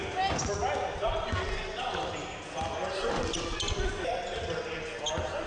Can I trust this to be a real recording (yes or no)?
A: yes